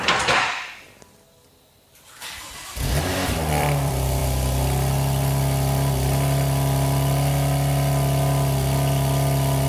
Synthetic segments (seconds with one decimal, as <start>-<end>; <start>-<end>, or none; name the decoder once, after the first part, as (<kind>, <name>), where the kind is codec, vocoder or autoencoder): 0.0-4.2 (vocoder, BigVGAN v2)